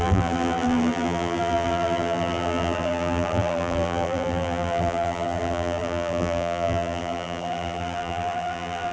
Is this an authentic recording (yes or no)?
no